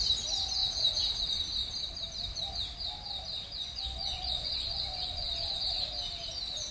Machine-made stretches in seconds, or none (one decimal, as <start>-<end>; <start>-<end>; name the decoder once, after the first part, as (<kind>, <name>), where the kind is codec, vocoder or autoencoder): 3.6-5.6 (vocoder, Vocos)